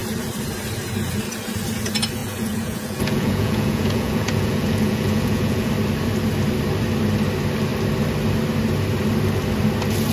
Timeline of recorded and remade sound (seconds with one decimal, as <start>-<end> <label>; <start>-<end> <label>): 0.0-2.2 recorded; 2.2-5.7 remade; 5.7-10.1 recorded